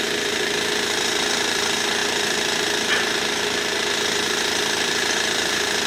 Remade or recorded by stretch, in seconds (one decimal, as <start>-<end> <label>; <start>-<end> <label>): 0.0-5.9 recorded